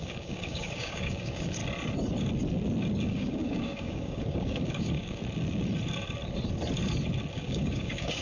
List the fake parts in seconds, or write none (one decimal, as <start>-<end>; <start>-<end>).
0.0-1.6; 3.0-5.2; 7.3-8.2